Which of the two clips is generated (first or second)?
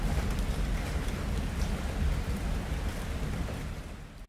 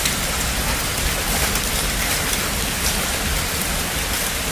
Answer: second